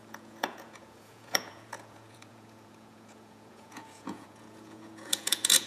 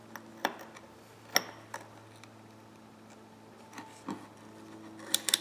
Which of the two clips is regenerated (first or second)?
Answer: first